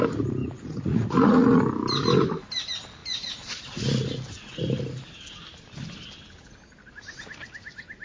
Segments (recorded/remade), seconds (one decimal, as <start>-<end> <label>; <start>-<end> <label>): 0.0-0.4 recorded; 0.4-1.6 remade; 1.6-8.0 recorded